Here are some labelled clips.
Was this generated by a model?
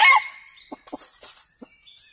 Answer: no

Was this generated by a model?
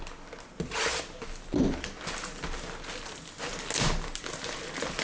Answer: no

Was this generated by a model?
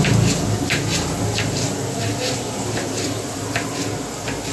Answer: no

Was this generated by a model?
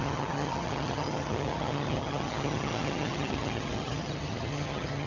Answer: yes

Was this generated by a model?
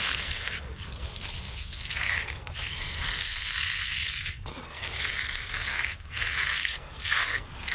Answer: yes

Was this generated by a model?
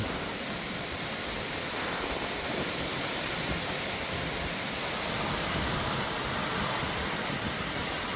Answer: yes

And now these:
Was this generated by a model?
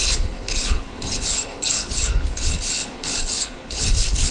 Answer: yes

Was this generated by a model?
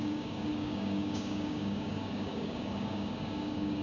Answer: yes